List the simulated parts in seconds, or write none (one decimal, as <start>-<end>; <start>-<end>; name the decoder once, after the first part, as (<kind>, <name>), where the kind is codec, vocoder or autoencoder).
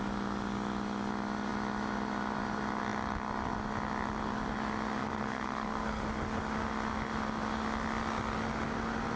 5.0-6.0 (codec, SNAC)